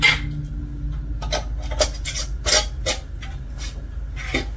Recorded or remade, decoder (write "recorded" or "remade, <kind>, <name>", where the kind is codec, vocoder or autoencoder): recorded